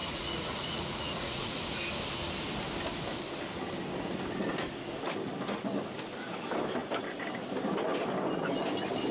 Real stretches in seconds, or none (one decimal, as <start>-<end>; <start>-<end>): 1.6-9.1